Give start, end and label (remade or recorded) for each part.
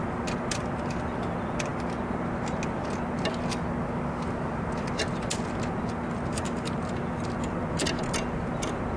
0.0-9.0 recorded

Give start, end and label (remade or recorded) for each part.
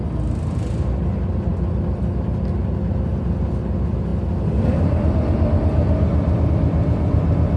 0.0-7.6 recorded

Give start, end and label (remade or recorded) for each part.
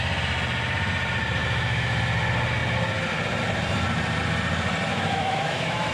0.0-1.4 recorded; 1.4-2.0 remade; 2.0-4.9 recorded; 4.9-5.9 remade